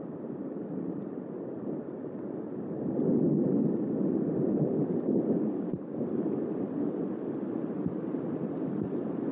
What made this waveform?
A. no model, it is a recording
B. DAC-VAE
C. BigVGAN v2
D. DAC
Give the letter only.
A